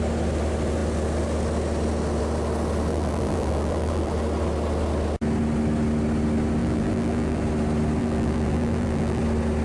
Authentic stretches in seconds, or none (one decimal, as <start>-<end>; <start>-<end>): 0.0-2.9; 4.1-6.6; 7.4-8.0; 9.2-9.6